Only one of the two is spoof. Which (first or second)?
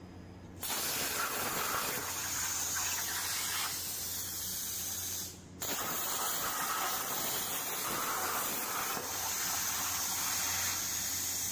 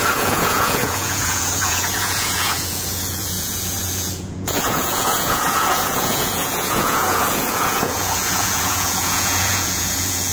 second